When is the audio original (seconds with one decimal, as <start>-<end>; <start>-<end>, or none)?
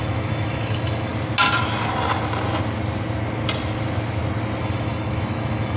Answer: 1.1-4.6